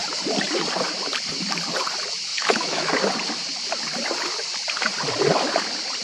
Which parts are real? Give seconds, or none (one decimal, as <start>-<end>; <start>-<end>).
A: 0.0-2.3; 2.9-6.0

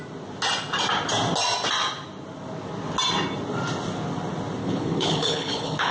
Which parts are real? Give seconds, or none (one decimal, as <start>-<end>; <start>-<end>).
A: 0.0-4.6

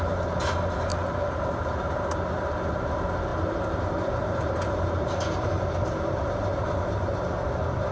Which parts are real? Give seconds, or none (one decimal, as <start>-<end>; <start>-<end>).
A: 0.0-0.9; 1.8-3.3; 7.2-7.9

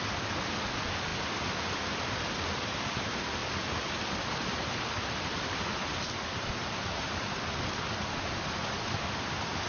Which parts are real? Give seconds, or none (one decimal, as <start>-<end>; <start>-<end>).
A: 0.0-9.7

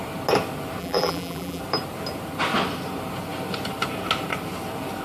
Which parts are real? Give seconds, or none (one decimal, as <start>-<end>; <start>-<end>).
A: 0.0-0.8; 1.6-5.0